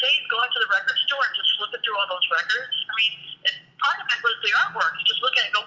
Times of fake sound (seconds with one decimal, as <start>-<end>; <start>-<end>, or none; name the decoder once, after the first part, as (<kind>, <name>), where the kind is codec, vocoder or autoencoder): none